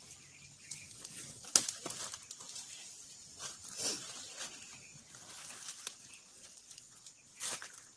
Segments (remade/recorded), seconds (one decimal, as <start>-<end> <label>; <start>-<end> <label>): 0.0-0.9 recorded; 0.9-1.4 remade; 1.4-6.3 recorded; 6.3-6.9 remade; 6.9-8.0 recorded